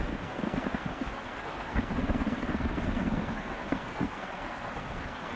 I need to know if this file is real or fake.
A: fake